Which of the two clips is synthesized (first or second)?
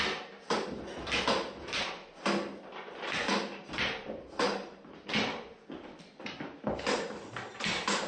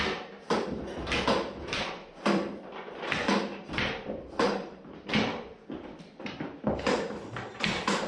second